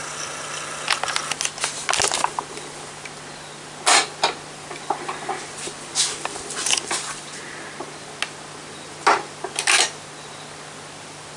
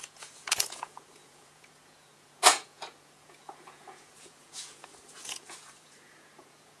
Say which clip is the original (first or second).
first